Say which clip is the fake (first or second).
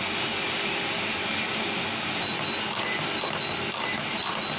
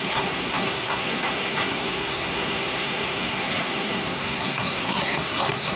second